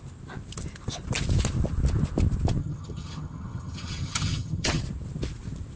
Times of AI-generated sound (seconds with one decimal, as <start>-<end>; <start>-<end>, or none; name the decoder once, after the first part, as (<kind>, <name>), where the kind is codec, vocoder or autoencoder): 2.6-4.8 (vocoder, HiFi-GAN)